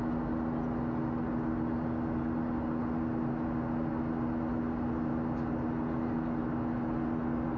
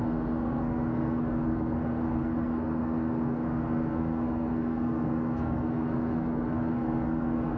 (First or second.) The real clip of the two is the first